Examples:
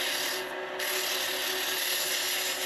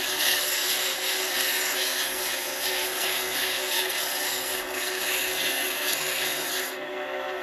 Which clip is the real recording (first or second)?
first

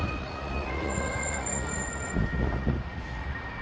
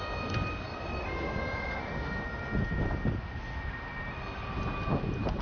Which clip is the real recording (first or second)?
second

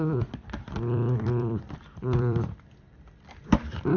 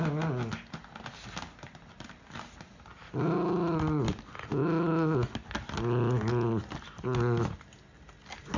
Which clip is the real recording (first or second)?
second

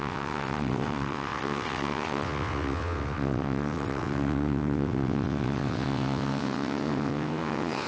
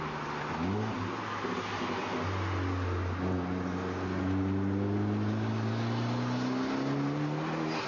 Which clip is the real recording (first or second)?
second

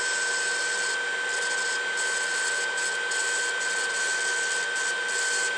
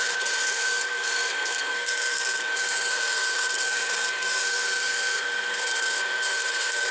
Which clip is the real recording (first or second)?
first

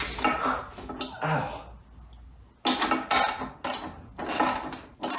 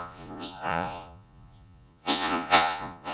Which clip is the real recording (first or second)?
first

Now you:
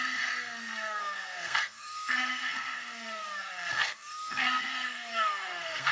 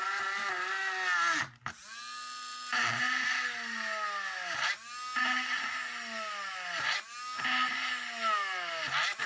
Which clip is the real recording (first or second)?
second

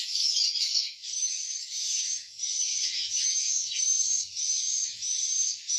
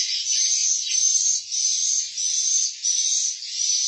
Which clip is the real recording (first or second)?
second